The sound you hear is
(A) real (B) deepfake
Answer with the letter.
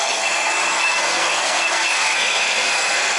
B